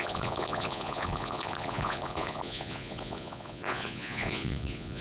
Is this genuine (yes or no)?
no